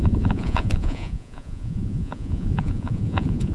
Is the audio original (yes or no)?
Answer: no